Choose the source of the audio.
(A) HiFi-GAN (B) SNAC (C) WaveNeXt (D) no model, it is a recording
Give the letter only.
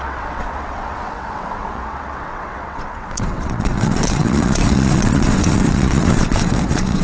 C